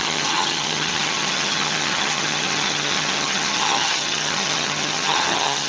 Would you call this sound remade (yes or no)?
yes